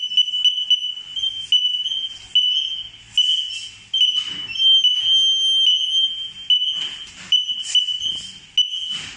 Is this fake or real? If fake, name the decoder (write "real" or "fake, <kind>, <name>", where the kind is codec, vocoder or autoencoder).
real